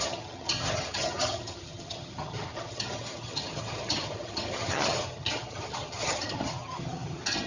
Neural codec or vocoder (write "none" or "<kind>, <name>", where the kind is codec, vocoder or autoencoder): vocoder, HiFi-GAN